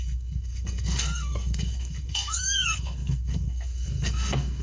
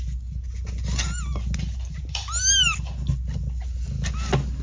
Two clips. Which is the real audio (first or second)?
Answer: second